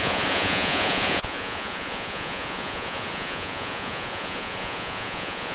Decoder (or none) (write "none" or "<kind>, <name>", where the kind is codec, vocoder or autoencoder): vocoder, Vocos